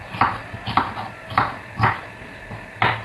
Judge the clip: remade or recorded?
recorded